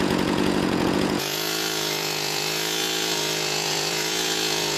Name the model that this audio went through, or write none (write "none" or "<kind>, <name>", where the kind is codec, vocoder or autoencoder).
vocoder, Vocos